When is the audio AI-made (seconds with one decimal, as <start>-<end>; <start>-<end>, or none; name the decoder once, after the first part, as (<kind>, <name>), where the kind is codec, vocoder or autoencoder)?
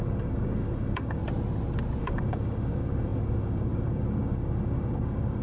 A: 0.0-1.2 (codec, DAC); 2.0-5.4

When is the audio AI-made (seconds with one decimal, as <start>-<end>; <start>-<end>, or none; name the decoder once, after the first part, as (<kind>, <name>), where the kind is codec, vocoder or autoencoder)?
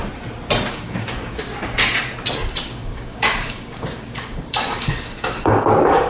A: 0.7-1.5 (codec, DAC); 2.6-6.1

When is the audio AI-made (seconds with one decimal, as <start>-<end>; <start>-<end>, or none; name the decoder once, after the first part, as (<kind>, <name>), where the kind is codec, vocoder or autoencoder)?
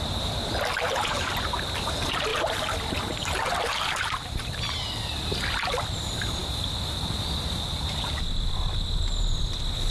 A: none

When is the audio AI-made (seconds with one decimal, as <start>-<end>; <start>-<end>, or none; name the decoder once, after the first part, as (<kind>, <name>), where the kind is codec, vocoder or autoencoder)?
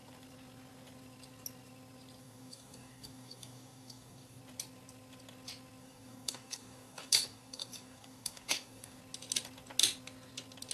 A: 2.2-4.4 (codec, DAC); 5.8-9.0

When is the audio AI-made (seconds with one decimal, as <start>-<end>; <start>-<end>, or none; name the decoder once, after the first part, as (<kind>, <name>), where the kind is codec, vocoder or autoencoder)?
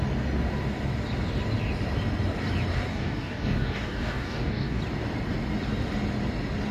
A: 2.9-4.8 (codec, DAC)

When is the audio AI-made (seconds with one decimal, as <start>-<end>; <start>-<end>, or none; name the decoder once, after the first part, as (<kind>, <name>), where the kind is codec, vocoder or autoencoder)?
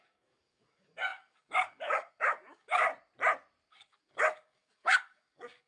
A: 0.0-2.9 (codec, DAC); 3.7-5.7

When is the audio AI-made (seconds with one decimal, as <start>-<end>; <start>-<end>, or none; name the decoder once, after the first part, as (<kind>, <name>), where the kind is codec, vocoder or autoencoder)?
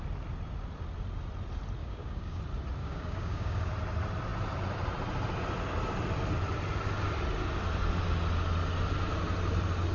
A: 1.8-2.4 (codec, DAC); 2.8-3.7